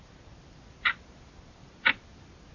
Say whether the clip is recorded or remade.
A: recorded